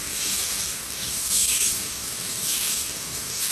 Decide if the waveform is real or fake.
fake